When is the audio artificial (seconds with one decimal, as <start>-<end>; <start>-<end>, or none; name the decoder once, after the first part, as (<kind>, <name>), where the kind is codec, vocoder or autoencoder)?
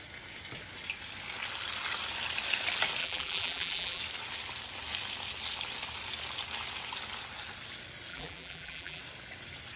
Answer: 3.0-4.0 (vocoder, BigVGAN v2); 8.1-9.0